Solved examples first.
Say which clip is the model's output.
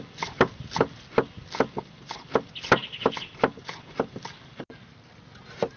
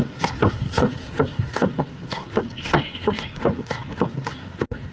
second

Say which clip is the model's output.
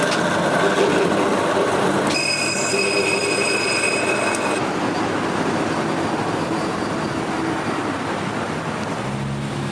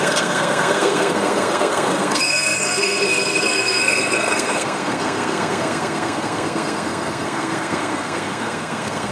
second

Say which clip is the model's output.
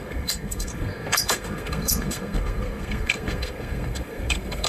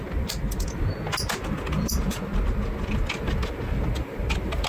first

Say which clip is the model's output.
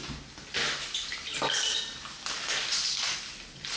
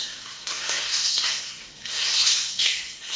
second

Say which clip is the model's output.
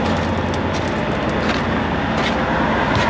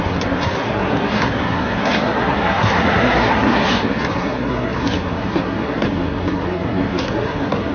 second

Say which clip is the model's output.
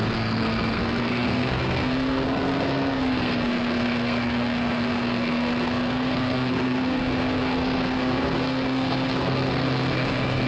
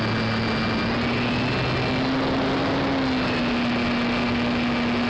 first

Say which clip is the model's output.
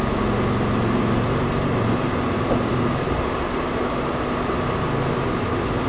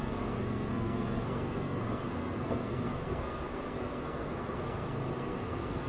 second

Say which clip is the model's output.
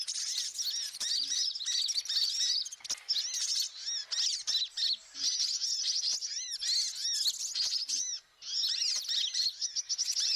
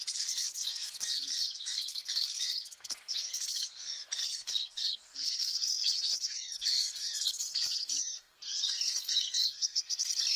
second